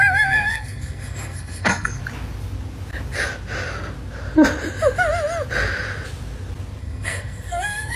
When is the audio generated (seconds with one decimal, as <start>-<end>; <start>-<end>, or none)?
0.0-2.0; 6.8-8.0